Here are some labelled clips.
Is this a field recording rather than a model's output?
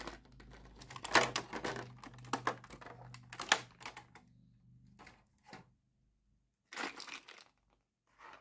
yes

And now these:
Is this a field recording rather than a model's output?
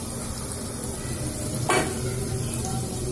yes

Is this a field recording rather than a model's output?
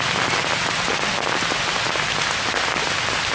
yes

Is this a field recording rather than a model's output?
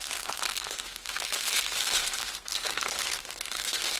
no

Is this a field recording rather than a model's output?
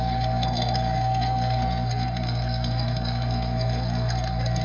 no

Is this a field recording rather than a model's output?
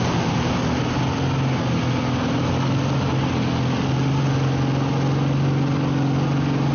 yes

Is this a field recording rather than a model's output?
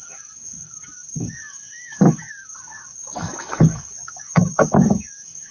no